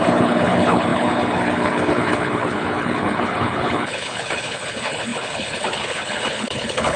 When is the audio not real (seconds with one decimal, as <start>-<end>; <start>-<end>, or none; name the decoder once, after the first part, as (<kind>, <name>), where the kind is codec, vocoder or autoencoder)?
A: 0.0-7.0 (codec, HILCodec)